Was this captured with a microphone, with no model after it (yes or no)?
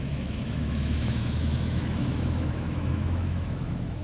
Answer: no